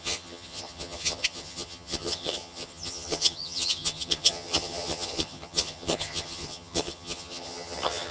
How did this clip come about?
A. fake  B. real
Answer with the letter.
A